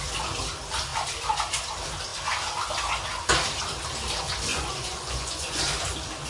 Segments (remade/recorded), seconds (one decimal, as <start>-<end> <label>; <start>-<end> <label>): 0.0-4.5 recorded; 4.5-5.6 remade; 5.6-6.3 recorded